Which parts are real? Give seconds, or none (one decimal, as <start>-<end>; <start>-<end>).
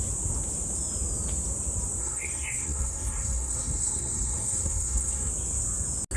0.0-2.0; 5.3-6.2